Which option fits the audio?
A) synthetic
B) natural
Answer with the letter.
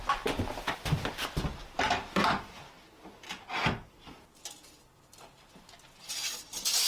B